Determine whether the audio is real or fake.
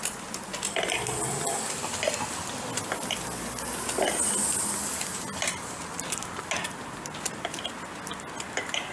real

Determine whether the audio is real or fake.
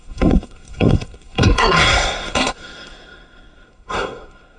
fake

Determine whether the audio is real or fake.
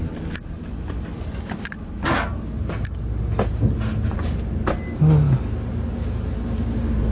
real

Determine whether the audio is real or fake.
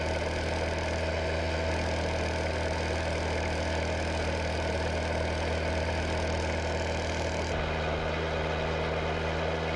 real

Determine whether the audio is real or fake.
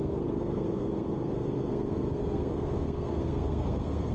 fake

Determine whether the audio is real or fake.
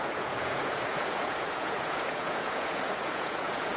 fake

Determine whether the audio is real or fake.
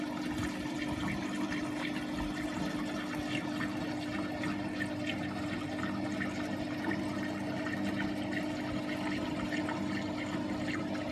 real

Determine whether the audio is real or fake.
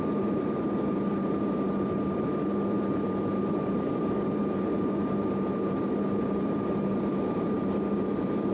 fake